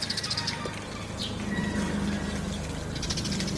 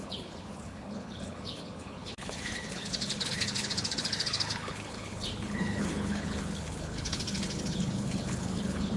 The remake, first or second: second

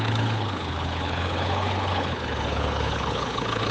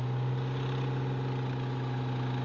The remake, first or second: first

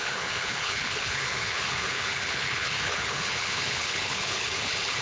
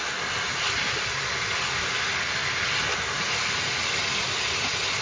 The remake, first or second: first